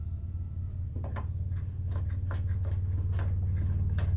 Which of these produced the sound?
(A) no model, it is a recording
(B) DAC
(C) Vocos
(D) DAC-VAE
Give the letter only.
A